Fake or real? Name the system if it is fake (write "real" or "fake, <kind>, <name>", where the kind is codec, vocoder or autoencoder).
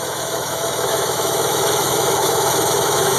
fake, autoencoder, DAC-VAE